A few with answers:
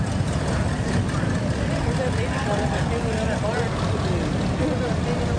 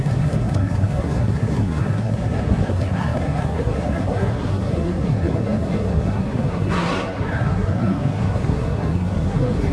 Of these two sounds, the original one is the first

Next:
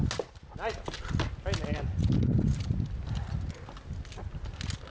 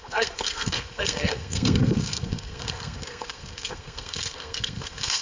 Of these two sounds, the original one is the first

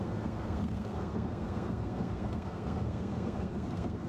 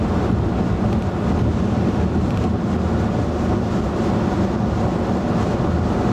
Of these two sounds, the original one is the second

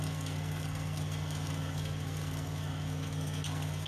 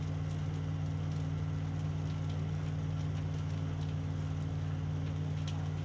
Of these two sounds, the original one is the second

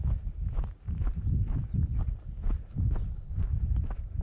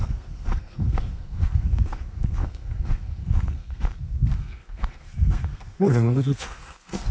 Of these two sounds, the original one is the first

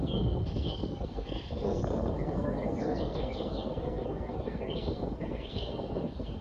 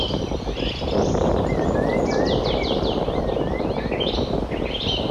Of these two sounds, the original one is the second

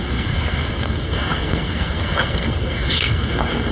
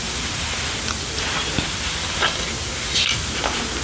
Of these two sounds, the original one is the second